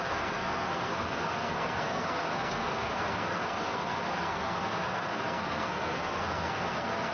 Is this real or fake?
fake